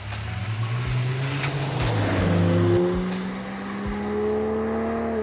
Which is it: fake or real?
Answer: real